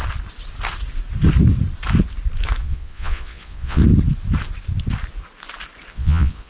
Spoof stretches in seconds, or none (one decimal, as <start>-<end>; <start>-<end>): 2.6-3.8; 5.9-6.5